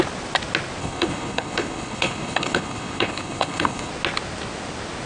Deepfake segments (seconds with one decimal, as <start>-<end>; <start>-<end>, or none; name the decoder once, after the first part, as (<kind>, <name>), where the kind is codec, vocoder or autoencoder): 0.8-3.9 (codec, HILCodec)